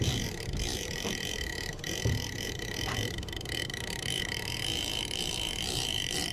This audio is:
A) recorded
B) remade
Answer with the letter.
B